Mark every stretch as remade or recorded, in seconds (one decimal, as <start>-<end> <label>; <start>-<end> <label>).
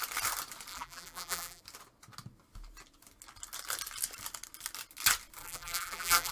0.0-0.7 recorded; 0.7-1.6 remade; 1.6-5.4 recorded; 5.4-6.3 remade